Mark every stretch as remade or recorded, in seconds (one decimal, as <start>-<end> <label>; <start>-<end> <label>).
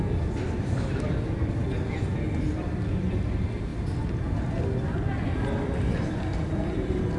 0.0-1.6 remade; 1.6-2.9 recorded; 2.9-3.7 remade; 3.7-5.6 recorded; 5.6-7.2 remade